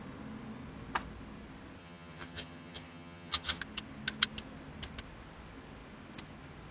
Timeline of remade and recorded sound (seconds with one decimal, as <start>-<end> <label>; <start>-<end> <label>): 0.0-1.8 recorded; 1.8-3.6 remade; 3.6-6.7 recorded